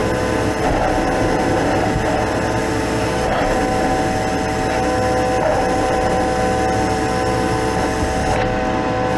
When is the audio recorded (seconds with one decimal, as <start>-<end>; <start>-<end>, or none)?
0.0-5.5; 6.2-9.2